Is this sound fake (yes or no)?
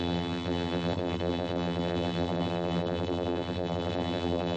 yes